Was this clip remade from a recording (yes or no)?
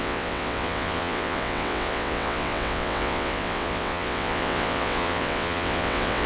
yes